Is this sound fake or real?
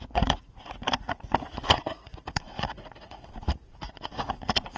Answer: fake